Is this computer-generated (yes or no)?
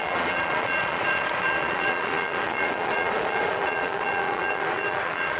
yes